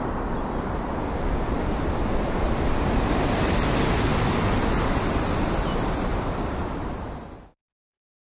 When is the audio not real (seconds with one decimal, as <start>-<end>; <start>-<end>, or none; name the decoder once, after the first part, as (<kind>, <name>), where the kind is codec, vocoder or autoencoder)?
none